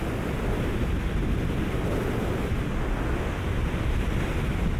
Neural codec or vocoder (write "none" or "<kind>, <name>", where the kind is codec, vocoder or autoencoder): none